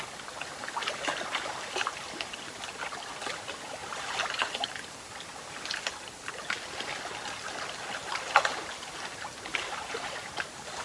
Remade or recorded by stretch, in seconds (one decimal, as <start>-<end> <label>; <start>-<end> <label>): 0.0-3.8 recorded; 3.8-4.7 remade; 4.7-8.0 recorded; 8.0-10.3 remade; 10.3-10.8 recorded